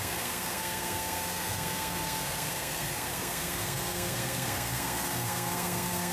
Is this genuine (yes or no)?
no